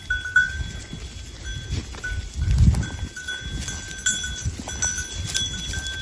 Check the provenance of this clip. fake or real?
real